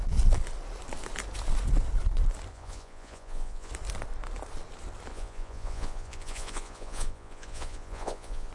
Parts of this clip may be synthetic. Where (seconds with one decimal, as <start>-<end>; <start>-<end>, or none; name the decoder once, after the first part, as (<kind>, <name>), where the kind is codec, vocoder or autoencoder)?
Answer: 2.5-3.7 (vocoder, Vocos); 5.1-8.5